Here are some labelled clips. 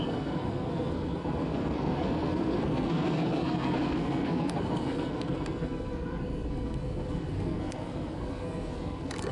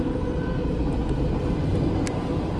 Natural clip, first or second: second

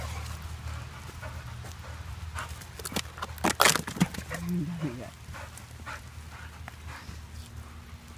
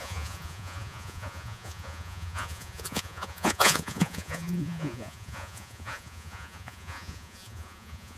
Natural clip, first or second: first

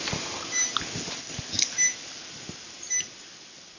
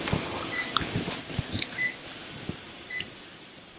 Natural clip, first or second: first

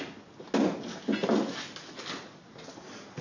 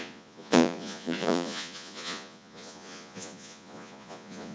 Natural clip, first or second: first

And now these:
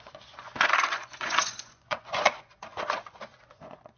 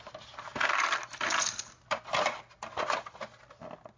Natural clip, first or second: second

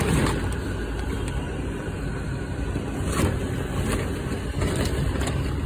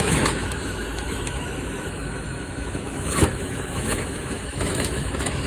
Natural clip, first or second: first